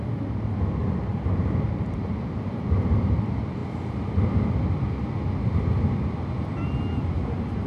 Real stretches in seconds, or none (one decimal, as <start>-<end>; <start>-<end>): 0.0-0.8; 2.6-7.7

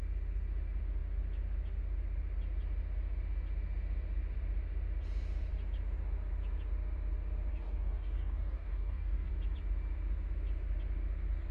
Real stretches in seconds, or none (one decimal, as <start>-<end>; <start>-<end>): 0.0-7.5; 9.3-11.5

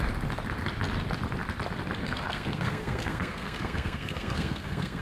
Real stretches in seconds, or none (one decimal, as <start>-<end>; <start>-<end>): 0.0-2.0